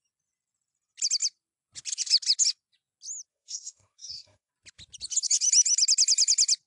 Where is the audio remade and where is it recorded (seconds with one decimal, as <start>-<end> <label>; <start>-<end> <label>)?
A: 0.0-3.3 recorded; 3.3-4.5 remade; 4.5-6.7 recorded